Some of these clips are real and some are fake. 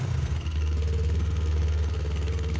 fake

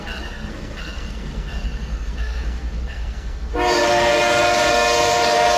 fake